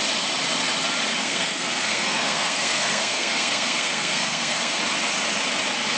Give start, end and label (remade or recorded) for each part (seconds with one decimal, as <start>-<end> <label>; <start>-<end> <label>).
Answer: 0.0-1.2 recorded; 1.2-4.8 remade; 4.8-6.0 recorded